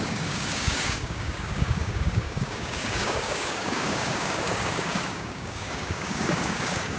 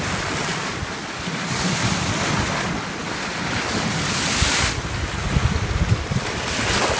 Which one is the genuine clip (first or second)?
second